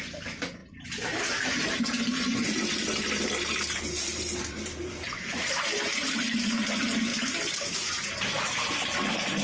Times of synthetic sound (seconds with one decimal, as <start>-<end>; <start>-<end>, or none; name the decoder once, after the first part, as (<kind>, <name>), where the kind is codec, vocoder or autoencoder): 0.6-5.5 (vocoder, BigVGAN v2); 5.9-6.6; 7.1-7.9